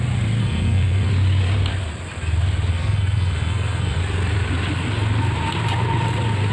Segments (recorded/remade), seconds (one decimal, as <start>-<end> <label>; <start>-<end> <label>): 0.0-0.4 recorded; 0.4-1.1 remade; 1.1-2.7 recorded; 2.7-4.0 remade; 4.0-6.5 recorded